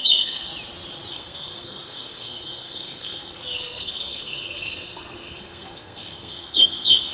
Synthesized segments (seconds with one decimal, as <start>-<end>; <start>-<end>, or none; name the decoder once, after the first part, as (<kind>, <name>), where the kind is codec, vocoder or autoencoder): 0.0-0.5 (codec, SNAC); 1.1-7.1